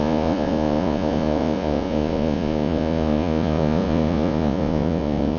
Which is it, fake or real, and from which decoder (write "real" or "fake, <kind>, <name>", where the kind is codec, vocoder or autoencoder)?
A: fake, vocoder, Vocos